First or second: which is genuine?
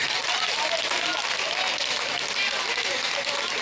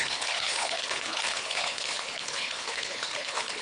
first